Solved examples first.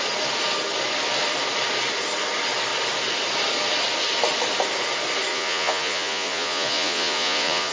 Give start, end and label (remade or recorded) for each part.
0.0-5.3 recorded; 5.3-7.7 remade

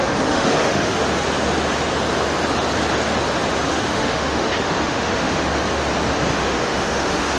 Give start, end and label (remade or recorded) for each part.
0.0-1.0 remade; 1.0-3.7 recorded; 3.7-5.4 remade; 5.4-6.3 recorded; 6.3-7.4 remade